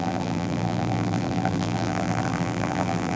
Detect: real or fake fake